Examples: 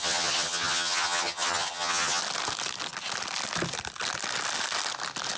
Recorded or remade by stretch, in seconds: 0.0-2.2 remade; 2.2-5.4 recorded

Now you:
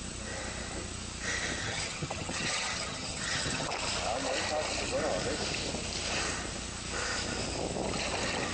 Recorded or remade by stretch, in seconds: 0.0-1.6 recorded; 1.6-3.7 remade; 3.7-8.5 recorded